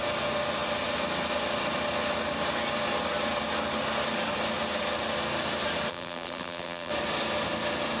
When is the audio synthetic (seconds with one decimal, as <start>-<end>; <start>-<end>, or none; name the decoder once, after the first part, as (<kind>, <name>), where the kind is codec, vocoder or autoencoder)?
5.9-6.9 (vocoder, BigVGAN v2)